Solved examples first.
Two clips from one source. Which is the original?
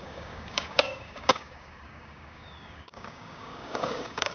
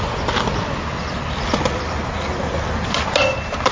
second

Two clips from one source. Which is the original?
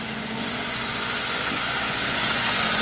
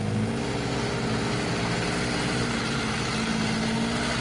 second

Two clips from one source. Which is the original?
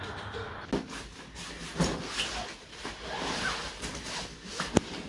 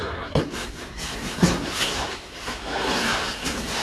first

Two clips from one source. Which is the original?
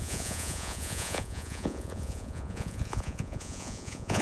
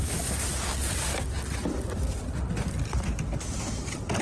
second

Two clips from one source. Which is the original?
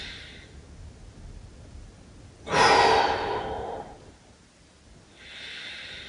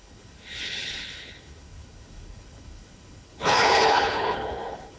first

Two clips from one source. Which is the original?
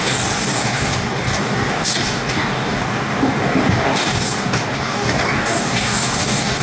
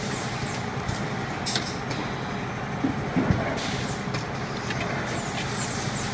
second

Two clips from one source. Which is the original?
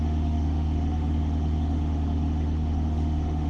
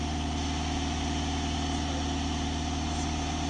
second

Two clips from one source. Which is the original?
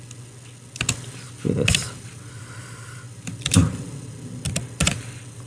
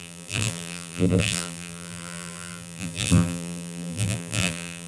first